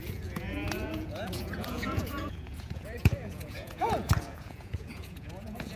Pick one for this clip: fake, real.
fake